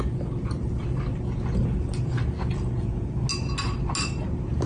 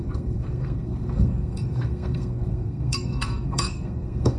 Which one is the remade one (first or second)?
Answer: second